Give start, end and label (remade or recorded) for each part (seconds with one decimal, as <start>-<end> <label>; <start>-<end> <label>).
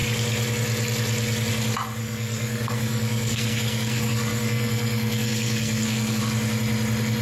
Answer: 0.0-2.0 recorded; 2.0-6.2 remade; 6.2-7.2 recorded